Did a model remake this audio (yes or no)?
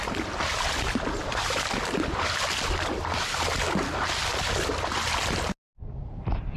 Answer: no